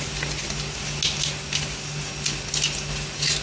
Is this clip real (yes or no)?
yes